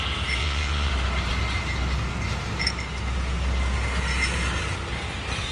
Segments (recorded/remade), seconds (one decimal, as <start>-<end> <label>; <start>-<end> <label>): 0.0-0.4 recorded; 0.4-0.9 remade; 0.9-5.5 recorded

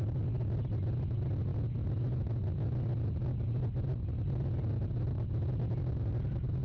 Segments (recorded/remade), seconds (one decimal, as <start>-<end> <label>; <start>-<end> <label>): 0.0-6.6 recorded

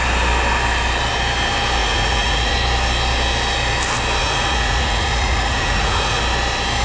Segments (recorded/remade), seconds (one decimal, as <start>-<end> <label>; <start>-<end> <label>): 0.0-1.8 recorded; 1.8-2.5 remade; 2.5-4.2 recorded; 4.2-6.2 remade; 6.2-6.8 recorded

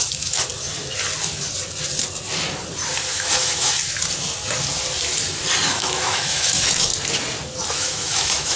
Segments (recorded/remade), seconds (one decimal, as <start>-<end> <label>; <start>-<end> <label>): 0.0-0.5 remade; 0.5-3.1 recorded; 3.1-3.8 remade; 3.8-5.7 recorded; 5.7-6.9 remade; 6.9-7.7 recorded; 7.7-8.6 remade

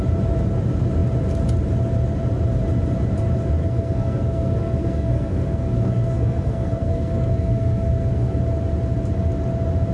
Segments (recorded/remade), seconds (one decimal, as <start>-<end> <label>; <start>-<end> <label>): 0.0-3.6 recorded; 3.6-8.4 remade; 8.4-9.9 recorded

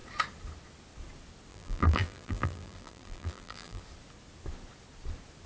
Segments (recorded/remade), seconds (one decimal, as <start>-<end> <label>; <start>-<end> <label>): 0.0-1.5 recorded; 1.5-3.8 remade; 3.8-5.5 recorded

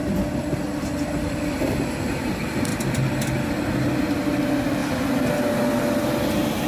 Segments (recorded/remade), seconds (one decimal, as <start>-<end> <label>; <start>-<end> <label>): 0.0-2.1 remade; 2.1-2.7 recorded; 2.7-3.5 remade; 3.5-6.7 recorded

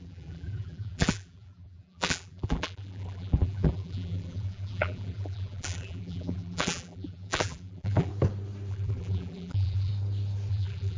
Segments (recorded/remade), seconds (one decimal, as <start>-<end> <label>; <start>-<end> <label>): 0.0-8.1 remade; 8.1-8.7 recorded; 8.7-9.9 remade; 9.9-10.5 recorded; 10.5-11.0 remade